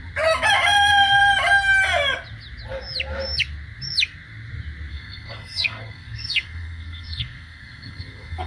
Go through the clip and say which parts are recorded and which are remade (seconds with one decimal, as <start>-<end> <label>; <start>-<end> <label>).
0.0-4.9 recorded; 4.9-8.5 remade